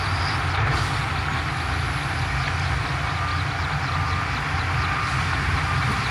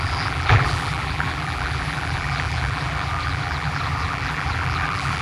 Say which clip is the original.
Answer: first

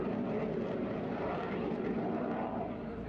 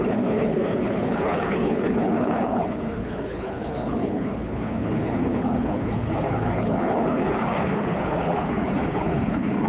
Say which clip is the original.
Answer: first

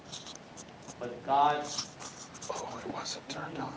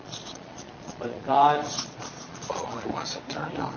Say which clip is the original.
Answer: first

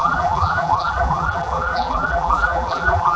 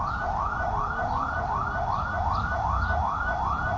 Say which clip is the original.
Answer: second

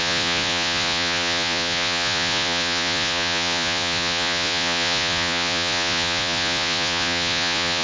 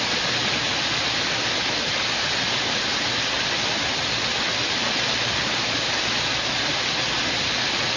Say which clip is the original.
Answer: second